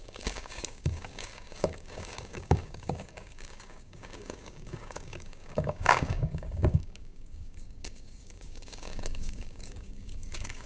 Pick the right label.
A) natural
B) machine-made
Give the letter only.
B